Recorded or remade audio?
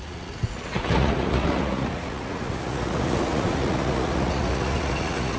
remade